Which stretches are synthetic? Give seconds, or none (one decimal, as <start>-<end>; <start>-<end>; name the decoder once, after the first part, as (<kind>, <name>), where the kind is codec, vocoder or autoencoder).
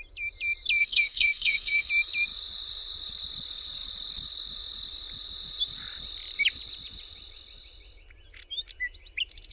0.8-1.9 (codec, SNAC)